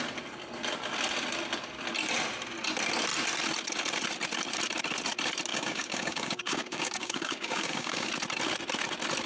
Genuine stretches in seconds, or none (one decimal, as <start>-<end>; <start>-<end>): 0.0-5.5; 8.1-9.3